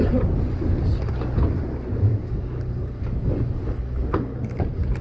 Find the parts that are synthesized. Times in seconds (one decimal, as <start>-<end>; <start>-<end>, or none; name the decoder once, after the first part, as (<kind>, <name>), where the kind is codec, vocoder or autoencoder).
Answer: 2.1-4.4 (codec, DAC)